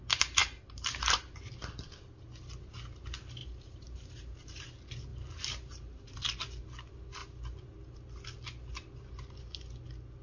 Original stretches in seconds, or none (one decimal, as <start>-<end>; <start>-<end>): 0.0-0.4; 1.5-3.4; 4.6-5.1; 6.4-10.2